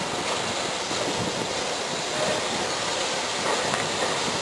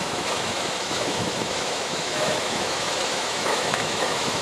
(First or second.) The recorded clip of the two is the first